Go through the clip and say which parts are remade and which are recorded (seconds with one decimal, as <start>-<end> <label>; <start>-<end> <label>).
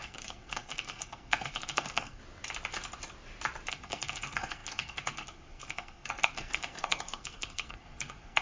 0.0-2.2 remade; 2.2-3.7 recorded; 3.7-8.4 remade